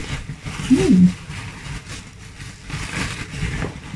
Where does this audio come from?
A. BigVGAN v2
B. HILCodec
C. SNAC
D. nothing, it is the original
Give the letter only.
D